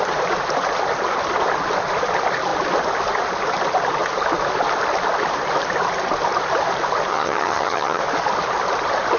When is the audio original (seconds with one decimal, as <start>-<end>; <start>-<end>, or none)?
0.0-7.1; 8.0-9.2

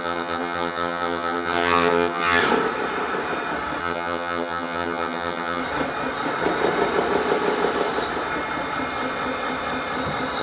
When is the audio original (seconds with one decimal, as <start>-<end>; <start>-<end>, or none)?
2.4-3.8; 5.6-10.4

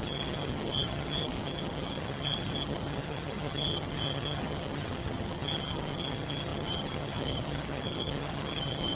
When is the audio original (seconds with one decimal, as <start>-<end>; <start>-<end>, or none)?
none